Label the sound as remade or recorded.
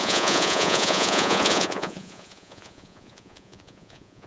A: remade